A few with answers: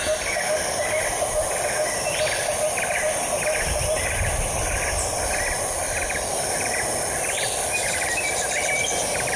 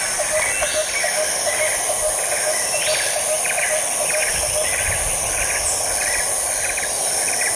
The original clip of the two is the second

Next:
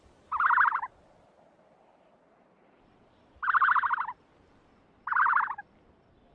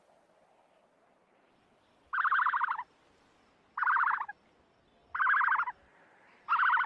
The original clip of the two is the second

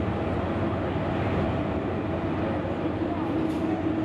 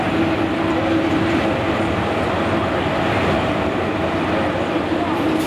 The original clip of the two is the first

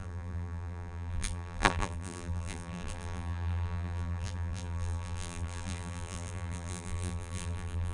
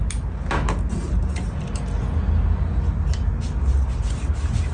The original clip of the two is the second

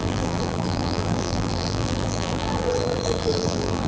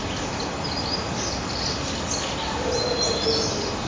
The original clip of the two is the second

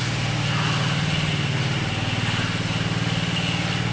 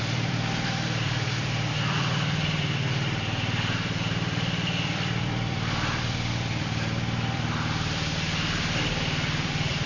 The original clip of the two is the first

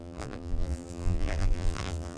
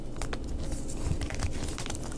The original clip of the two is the second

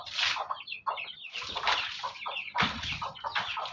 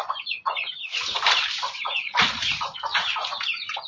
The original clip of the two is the first